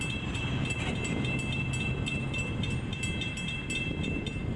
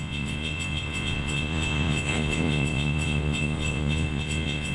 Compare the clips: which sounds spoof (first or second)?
second